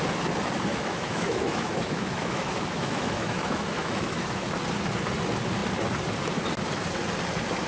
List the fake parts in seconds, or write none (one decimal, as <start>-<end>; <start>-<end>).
0.7-4.5